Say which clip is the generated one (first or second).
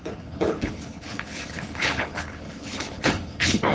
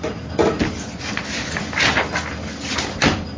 first